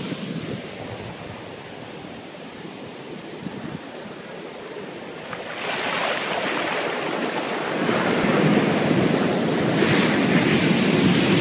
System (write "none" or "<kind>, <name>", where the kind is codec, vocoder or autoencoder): none